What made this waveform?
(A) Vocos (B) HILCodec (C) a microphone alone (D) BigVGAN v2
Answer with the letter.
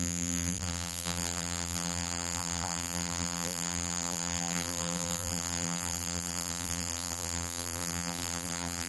D